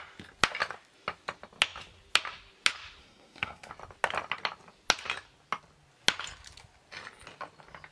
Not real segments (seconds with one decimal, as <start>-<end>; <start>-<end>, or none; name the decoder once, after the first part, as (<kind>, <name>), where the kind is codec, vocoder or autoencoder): 3.0-3.7 (codec, SNAC)